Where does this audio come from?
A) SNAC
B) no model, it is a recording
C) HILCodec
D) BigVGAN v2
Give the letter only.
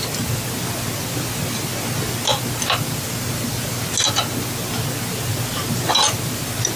B